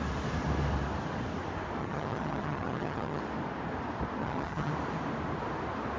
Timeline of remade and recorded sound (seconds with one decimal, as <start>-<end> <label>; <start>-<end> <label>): 0.0-1.8 recorded; 1.8-3.2 remade; 3.2-4.2 recorded; 4.2-4.7 remade; 4.7-6.0 recorded